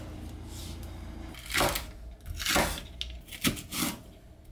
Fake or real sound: real